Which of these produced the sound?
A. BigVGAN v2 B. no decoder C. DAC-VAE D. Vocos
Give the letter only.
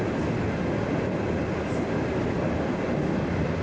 B